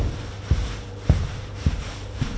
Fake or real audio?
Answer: real